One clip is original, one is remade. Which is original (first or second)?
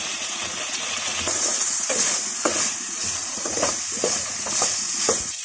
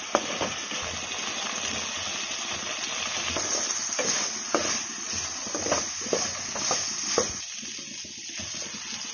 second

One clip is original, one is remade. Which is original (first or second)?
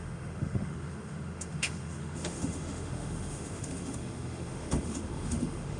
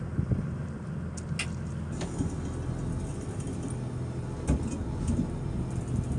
second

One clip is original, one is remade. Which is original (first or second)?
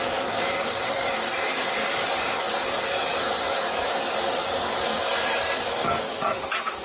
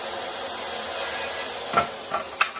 second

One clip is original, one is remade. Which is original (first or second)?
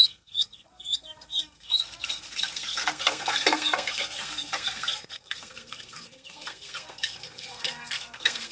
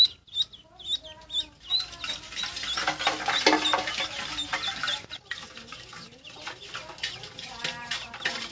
second